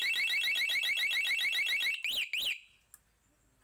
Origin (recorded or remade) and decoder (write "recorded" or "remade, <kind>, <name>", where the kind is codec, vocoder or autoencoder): recorded